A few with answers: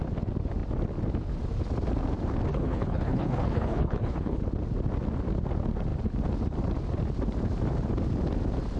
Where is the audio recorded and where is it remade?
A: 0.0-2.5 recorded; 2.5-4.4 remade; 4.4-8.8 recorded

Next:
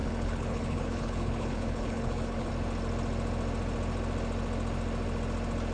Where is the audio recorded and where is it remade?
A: 0.0-2.5 remade; 2.5-5.7 recorded

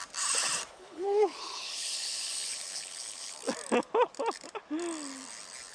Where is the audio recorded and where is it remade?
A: 0.0-0.7 recorded; 0.7-3.4 remade; 3.4-5.7 recorded

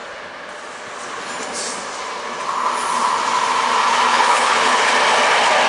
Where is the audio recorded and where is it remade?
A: 0.0-4.1 recorded; 4.1-4.9 remade; 4.9-5.7 recorded

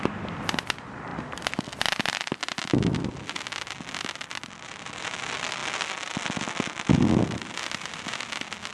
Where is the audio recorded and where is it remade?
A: 0.0-8.7 recorded

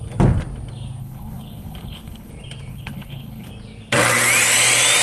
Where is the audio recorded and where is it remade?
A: 0.0-1.0 recorded; 1.0-2.3 remade; 2.3-2.7 recorded; 2.7-3.5 remade; 3.5-5.0 recorded

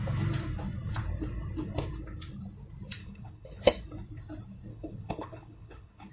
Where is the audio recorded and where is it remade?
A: 0.0-3.0 recorded; 3.0-3.7 remade; 3.7-4.7 recorded; 4.7-6.1 remade

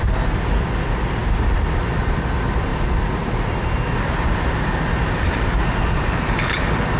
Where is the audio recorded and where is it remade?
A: 0.0-7.0 recorded